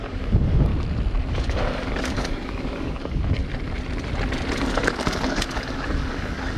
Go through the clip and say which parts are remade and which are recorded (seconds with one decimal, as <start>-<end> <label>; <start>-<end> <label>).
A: 0.0-0.7 remade; 0.7-1.3 recorded; 1.3-3.4 remade; 3.4-4.6 recorded; 4.6-6.6 remade